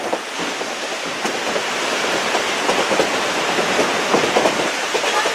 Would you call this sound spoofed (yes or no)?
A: no